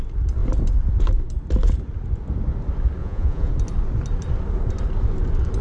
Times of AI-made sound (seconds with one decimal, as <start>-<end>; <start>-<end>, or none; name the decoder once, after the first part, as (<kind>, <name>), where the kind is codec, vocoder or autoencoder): 3.0-3.5 (vocoder, Vocos)